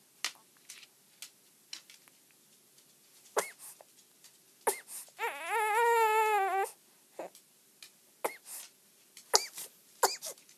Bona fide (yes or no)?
yes